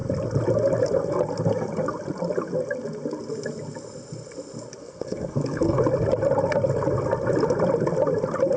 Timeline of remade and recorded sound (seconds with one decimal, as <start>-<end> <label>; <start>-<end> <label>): 0.0-4.8 recorded; 4.8-5.8 remade; 5.8-8.6 recorded